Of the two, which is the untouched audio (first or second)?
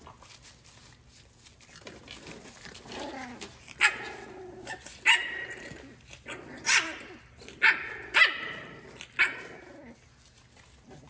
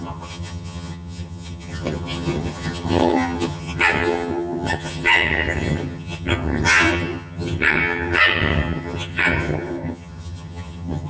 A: first